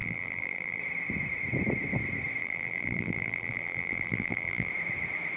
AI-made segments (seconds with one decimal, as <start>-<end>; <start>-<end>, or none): 0.0-0.8; 2.4-4.7